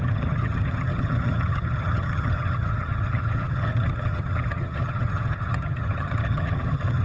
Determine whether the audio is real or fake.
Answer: fake